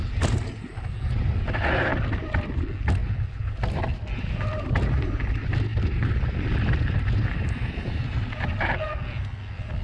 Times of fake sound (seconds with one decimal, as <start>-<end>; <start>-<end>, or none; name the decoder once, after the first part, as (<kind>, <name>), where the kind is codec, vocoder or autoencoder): none